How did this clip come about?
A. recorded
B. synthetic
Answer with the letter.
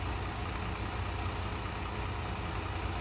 A